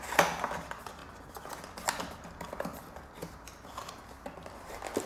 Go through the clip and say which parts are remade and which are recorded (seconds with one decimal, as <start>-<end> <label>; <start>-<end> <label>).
0.0-5.1 recorded